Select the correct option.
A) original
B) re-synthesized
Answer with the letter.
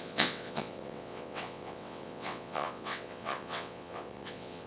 B